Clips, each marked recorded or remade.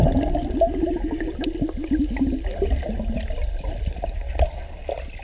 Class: recorded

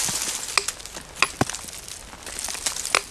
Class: recorded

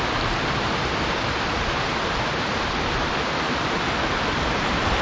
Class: recorded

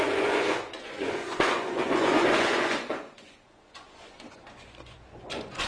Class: remade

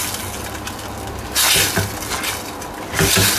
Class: recorded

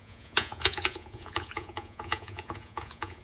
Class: remade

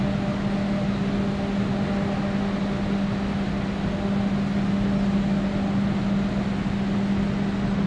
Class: recorded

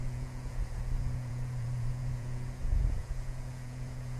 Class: remade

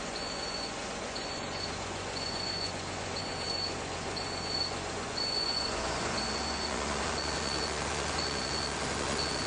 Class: remade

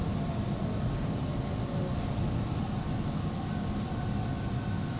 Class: recorded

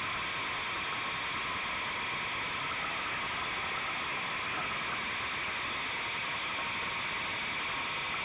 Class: recorded